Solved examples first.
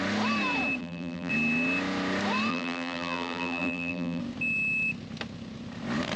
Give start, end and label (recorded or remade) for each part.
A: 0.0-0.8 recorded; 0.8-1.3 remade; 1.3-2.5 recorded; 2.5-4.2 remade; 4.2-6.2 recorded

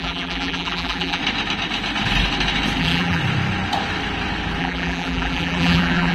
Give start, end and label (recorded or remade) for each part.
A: 0.0-1.2 remade; 1.2-2.8 recorded; 2.8-3.2 remade; 3.2-4.6 recorded; 4.6-6.1 remade

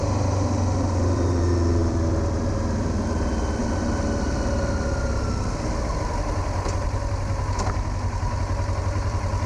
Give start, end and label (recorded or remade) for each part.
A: 0.0-3.6 remade; 3.6-8.8 recorded; 8.8-9.5 remade

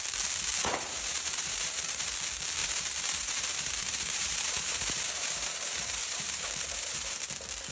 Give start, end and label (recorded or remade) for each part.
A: 0.0-0.5 recorded; 0.5-2.1 remade; 2.1-2.6 recorded; 2.6-7.2 remade; 7.2-7.7 recorded